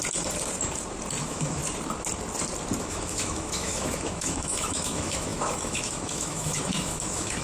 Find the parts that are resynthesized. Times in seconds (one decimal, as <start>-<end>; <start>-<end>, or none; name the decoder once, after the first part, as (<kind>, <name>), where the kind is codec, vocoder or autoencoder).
1.2-1.6 (autoencoder, DAC-VAE); 2.8-7.4